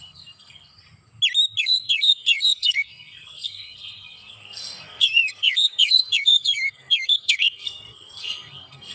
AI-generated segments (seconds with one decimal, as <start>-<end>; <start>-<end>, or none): 0.0-0.7; 1.6-8.9